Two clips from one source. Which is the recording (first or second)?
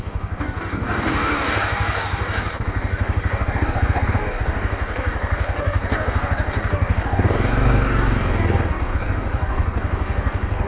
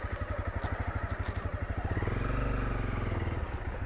second